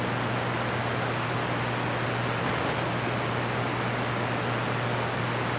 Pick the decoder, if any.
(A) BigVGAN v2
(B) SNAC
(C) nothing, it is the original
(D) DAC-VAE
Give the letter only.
C